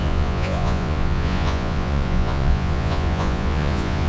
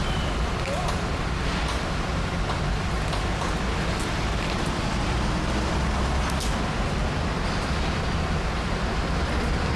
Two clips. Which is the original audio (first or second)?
second